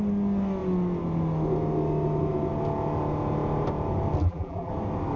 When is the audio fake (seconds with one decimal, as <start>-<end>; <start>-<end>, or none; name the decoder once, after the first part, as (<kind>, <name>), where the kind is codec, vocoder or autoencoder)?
4.2-4.7 (vocoder, BigVGAN v2)